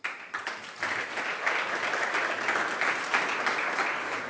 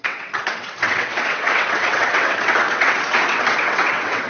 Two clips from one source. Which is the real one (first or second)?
first